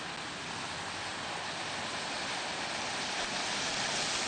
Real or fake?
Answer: real